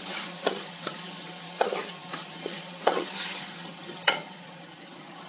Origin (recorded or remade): remade